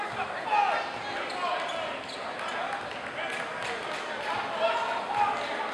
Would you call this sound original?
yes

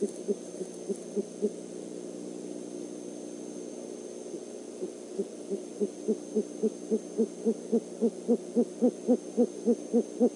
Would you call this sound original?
yes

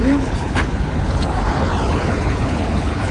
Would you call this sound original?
no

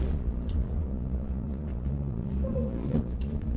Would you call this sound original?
no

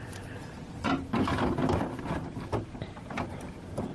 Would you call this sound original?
yes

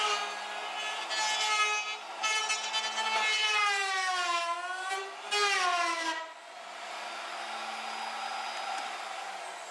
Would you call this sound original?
yes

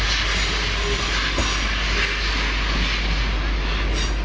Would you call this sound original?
yes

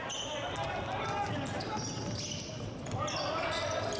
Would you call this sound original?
yes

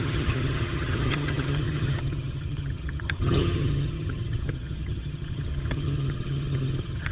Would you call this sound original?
no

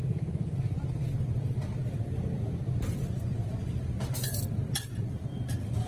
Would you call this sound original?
no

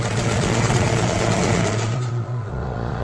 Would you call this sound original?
no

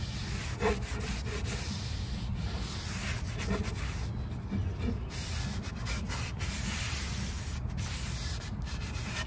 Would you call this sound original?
yes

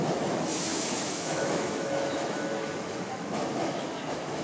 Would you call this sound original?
no